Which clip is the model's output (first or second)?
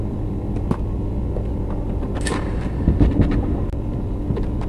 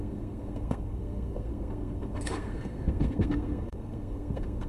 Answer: second